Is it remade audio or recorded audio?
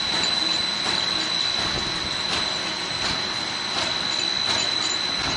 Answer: recorded